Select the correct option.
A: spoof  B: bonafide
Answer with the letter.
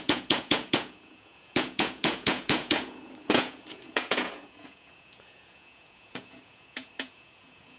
A